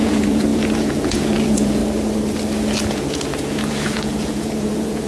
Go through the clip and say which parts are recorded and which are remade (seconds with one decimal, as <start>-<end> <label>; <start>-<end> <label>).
0.0-1.8 remade; 1.8-2.9 recorded; 2.9-5.1 remade